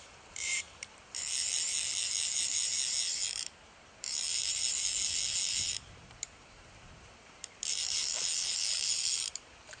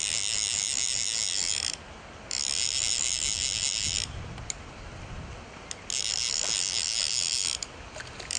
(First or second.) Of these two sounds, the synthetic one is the first